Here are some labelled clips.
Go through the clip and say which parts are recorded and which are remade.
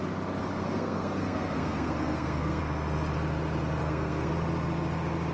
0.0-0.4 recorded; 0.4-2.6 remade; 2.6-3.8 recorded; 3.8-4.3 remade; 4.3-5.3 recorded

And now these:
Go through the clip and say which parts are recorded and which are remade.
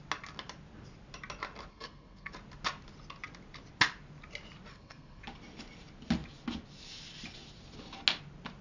0.0-1.7 recorded; 1.7-2.3 remade; 2.3-4.7 recorded; 4.7-5.2 remade; 5.2-8.6 recorded